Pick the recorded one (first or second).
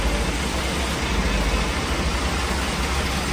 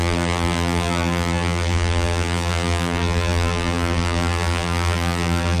first